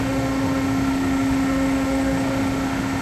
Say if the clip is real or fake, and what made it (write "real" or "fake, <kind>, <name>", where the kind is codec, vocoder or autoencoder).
fake, autoencoder, DAC-VAE